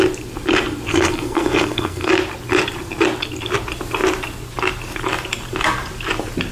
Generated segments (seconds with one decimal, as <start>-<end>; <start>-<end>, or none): 0.9-2.1